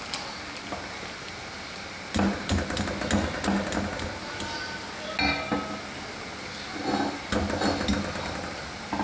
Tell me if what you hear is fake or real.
real